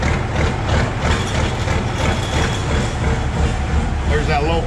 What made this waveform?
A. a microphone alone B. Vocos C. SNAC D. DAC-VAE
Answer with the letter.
A